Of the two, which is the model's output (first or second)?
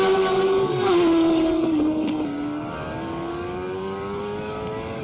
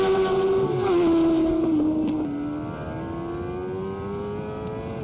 first